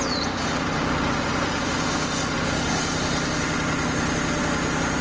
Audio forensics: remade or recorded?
recorded